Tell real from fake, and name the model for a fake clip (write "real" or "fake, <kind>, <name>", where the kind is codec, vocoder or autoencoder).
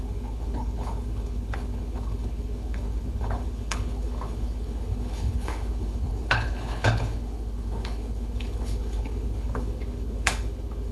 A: fake, codec, HILCodec